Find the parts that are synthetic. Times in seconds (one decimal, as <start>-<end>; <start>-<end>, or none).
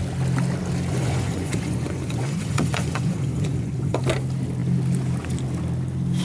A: 0.9-4.0